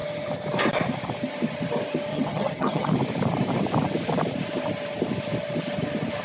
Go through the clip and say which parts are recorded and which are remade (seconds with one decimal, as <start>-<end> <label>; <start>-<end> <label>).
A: 0.0-2.1 recorded; 2.1-2.9 remade; 2.9-6.2 recorded